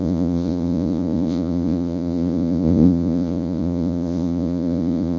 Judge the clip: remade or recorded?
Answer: remade